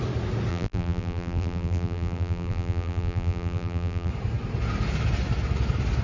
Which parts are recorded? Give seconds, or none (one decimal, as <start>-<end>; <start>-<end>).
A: 0.0-0.5; 4.1-6.0